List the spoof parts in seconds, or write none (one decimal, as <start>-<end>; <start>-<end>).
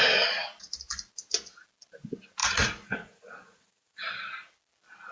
2.4-4.1